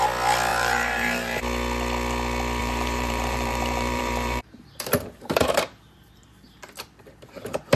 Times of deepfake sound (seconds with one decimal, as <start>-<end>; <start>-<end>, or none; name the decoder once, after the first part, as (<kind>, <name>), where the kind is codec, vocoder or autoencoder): 0.5-1.4 (vocoder, BigVGAN v2); 2.6-6.6